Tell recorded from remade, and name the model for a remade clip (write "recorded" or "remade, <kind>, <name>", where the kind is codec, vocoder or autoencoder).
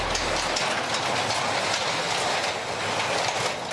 recorded